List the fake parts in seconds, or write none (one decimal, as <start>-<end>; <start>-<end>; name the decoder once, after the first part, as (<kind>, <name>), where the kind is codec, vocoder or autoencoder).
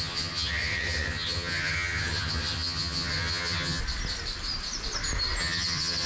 0.0-3.8 (vocoder, HiFi-GAN); 5.4-6.1